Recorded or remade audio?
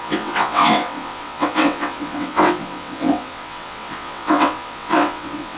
remade